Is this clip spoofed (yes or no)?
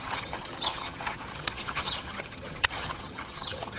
yes